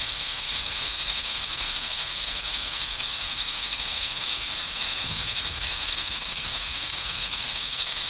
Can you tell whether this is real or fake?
fake